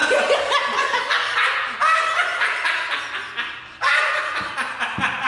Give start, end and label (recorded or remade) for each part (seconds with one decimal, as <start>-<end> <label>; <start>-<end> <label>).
0.0-5.3 recorded